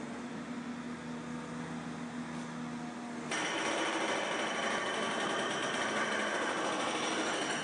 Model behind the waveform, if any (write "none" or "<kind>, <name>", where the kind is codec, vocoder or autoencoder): none